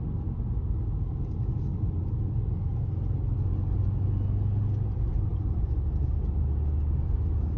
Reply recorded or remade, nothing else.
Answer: recorded